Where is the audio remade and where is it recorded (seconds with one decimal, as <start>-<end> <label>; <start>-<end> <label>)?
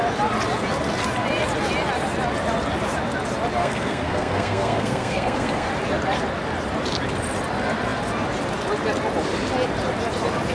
0.0-3.6 recorded; 3.6-5.7 remade; 5.7-10.5 recorded